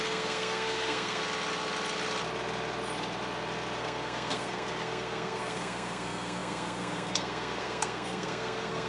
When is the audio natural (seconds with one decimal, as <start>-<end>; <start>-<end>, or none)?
1.2-3.8